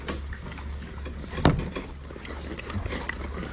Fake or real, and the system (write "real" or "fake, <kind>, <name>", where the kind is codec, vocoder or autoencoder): real